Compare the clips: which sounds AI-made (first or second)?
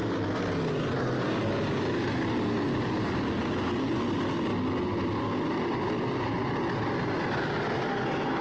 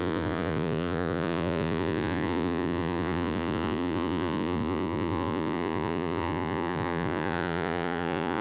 second